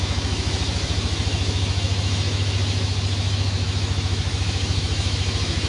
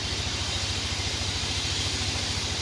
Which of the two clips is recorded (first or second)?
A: second